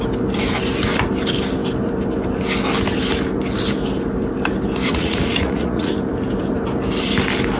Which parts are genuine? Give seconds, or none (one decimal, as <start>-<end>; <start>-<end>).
0.0-4.9; 5.9-7.6